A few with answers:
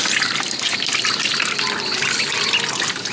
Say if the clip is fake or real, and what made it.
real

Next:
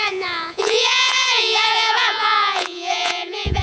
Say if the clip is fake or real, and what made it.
fake, vocoder, Vocos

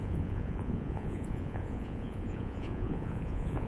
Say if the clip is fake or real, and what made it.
fake, vocoder, Vocos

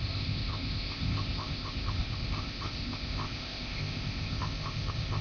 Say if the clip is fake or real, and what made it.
fake, codec, ZipCodec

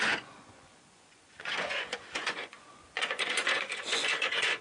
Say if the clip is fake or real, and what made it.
fake, vocoder, Vocos